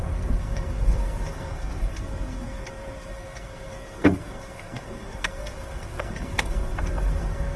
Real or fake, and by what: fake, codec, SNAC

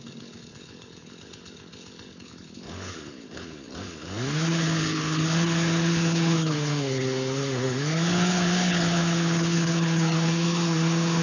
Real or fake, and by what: fake, codec, HILCodec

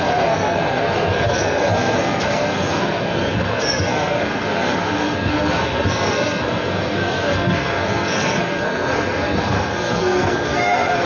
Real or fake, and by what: fake, codec, SNAC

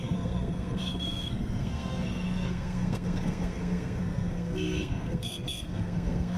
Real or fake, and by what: fake, codec, SNAC